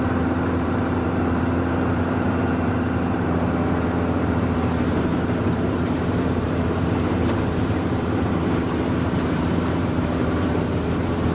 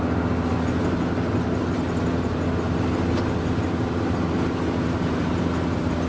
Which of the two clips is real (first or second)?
second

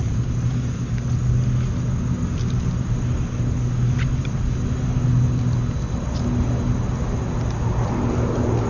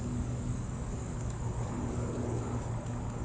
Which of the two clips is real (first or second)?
first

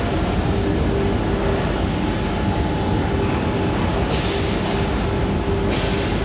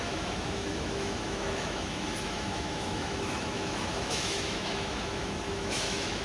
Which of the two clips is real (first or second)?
first